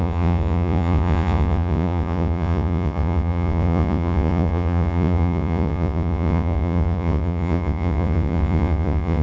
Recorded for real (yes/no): no